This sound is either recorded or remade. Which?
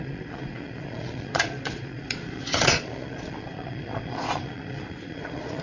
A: remade